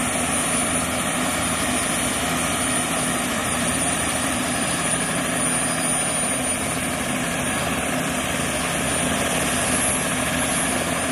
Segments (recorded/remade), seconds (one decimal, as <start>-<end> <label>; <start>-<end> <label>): 0.0-3.4 recorded; 3.4-5.4 remade; 5.4-11.1 recorded